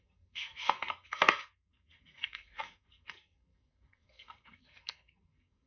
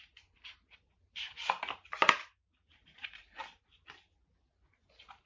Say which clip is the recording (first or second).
second